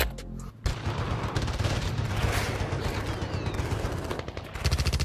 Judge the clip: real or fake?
real